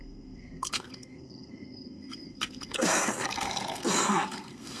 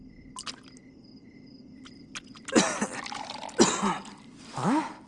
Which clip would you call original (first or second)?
second